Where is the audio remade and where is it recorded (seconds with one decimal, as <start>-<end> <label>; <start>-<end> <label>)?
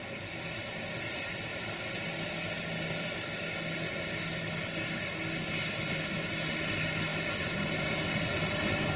0.0-9.0 recorded